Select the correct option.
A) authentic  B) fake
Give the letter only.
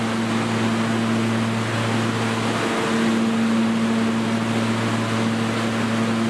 A